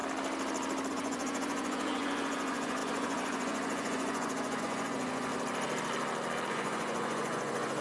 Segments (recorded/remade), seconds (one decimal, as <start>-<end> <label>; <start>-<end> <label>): 0.0-0.9 recorded; 0.9-5.3 remade; 5.3-6.5 recorded; 6.5-7.8 remade